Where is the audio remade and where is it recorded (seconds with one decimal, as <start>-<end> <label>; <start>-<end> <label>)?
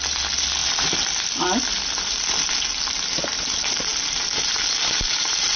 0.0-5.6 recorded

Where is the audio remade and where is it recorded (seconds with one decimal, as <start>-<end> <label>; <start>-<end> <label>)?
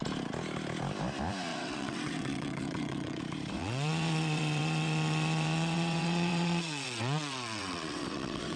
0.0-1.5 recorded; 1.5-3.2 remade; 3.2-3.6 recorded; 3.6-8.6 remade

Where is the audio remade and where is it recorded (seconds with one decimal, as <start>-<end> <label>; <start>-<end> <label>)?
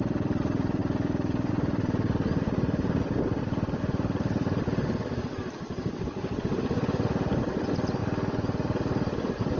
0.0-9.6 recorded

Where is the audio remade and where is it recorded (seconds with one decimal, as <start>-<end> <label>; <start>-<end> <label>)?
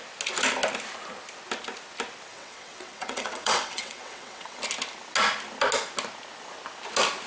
0.0-2.3 recorded; 2.3-4.6 remade; 4.6-7.3 recorded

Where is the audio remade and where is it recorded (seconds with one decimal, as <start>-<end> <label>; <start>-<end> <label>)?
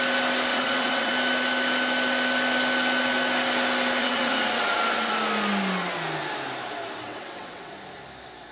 0.0-0.5 recorded; 0.5-1.1 remade; 1.1-4.0 recorded; 4.0-5.1 remade; 5.1-7.0 recorded; 7.0-7.7 remade; 7.7-8.5 recorded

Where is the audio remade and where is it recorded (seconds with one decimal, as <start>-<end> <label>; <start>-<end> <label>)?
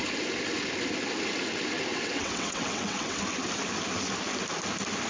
0.0-1.9 recorded; 1.9-3.2 remade; 3.2-5.1 recorded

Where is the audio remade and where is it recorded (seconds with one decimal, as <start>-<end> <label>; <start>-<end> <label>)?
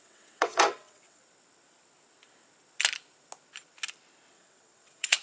0.0-1.2 remade; 1.2-4.3 recorded; 4.3-5.2 remade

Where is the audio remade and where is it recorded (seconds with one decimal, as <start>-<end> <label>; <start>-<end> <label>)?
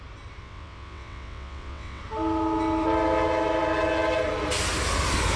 0.0-0.4 recorded; 0.4-2.0 remade; 2.0-5.4 recorded